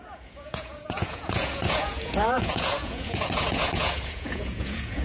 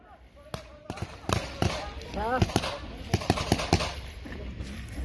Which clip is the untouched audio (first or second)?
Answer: second